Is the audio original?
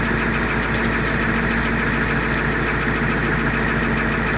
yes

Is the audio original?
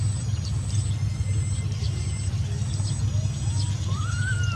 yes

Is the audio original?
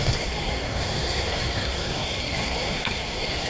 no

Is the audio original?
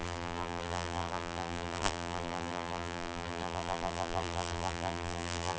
no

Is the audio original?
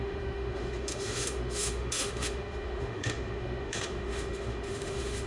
no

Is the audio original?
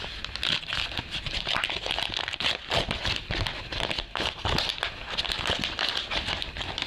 yes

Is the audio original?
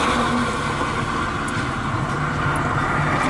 yes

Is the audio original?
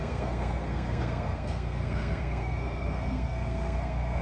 no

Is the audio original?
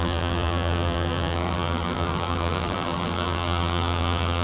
no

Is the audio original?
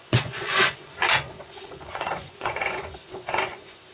no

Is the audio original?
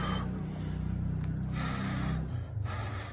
yes